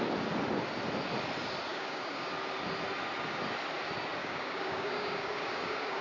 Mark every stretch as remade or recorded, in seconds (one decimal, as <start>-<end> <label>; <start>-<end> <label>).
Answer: 0.0-1.7 recorded; 1.7-2.3 remade; 2.3-4.2 recorded; 4.2-6.0 remade